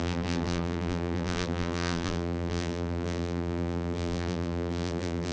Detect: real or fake fake